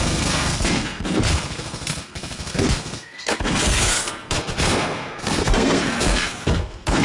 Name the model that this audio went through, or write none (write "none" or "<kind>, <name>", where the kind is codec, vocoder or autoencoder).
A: codec, SNAC